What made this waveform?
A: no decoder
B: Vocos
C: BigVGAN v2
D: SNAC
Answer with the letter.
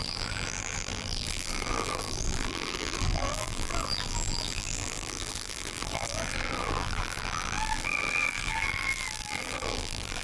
C